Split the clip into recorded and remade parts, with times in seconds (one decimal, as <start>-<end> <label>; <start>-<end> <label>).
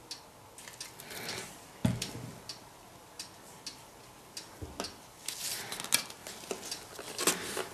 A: 0.0-7.7 recorded